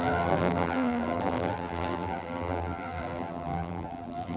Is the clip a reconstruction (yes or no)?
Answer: yes